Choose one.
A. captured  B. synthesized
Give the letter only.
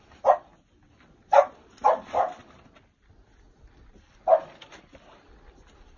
A